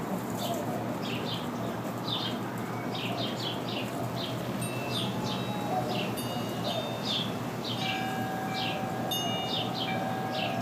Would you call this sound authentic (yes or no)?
yes